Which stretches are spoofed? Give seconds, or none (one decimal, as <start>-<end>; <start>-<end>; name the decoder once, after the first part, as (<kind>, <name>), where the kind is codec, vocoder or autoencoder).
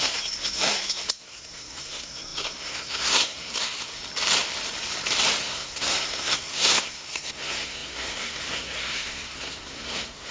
0.0-4.0 (codec, SNAC); 5.4-10.3